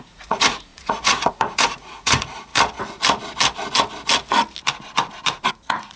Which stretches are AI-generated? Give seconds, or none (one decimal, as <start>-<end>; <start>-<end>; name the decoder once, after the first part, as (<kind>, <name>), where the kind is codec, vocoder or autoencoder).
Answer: 0.0-2.5 (vocoder, Vocos); 5.5-6.0